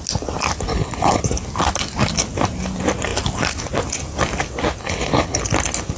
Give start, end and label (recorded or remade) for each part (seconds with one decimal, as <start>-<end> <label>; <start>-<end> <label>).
0.0-0.7 recorded; 0.7-1.2 remade; 1.2-4.8 recorded; 4.8-5.4 remade; 5.4-6.0 recorded